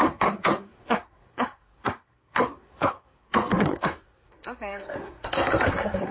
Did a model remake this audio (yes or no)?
yes